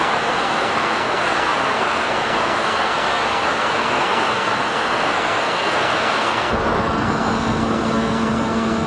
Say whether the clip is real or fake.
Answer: fake